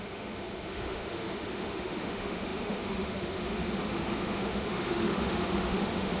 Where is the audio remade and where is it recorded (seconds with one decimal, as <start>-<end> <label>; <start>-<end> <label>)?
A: 0.0-6.2 remade